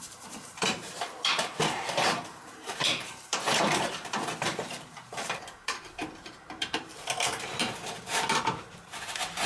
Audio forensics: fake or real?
fake